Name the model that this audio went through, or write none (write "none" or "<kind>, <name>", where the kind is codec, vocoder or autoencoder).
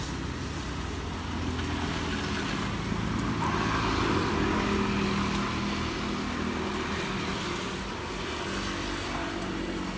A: none